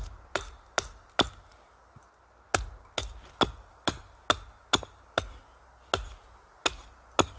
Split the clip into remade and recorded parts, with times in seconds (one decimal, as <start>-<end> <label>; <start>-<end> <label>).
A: 0.0-7.4 recorded